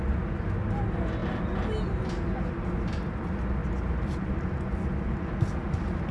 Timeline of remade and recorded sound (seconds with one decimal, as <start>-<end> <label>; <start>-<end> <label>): 0.0-6.1 recorded